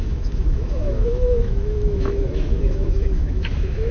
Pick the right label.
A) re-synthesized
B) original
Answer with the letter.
A